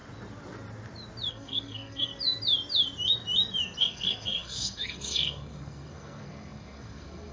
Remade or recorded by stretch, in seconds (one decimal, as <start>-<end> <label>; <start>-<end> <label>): 0.0-1.3 recorded; 1.3-2.1 remade; 2.1-3.8 recorded; 3.8-7.3 remade